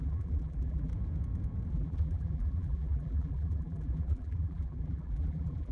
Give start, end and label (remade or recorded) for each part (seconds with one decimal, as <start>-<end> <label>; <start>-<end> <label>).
0.0-0.9 remade; 0.9-1.7 recorded; 1.7-5.7 remade